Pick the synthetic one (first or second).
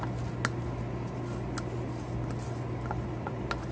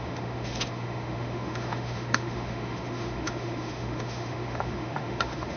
second